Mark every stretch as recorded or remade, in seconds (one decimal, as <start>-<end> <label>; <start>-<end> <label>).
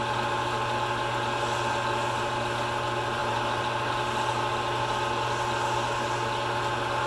0.0-3.2 recorded; 3.2-4.0 remade; 4.0-7.1 recorded